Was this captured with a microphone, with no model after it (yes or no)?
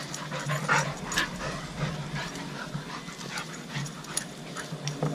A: yes